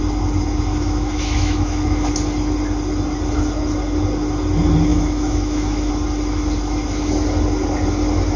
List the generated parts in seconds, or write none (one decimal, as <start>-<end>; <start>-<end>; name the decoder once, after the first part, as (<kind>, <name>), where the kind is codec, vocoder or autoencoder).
0.7-2.1 (autoencoder, DAC-VAE); 4.9-5.9